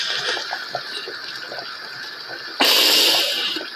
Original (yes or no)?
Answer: yes